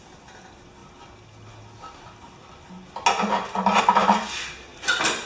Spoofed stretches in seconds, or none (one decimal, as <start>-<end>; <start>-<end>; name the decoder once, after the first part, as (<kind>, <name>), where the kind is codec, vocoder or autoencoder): 4.7-5.3 (vocoder, BigVGAN v2)